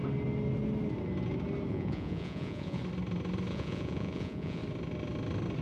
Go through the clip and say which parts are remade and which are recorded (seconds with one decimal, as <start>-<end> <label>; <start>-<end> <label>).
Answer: 0.0-1.7 recorded; 1.7-2.8 remade; 2.8-3.5 recorded; 3.5-4.6 remade; 4.6-5.6 recorded